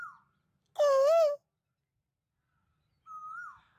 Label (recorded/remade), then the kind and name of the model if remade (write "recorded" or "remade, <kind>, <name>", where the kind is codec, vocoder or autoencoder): recorded